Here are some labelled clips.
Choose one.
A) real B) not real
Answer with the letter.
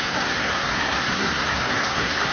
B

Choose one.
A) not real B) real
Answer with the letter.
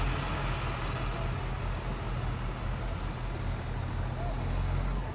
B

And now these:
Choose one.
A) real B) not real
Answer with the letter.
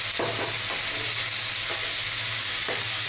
A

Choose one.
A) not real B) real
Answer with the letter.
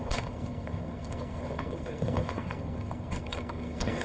A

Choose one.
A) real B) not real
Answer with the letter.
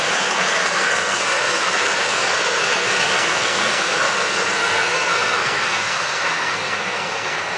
B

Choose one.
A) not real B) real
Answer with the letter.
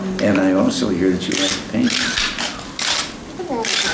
B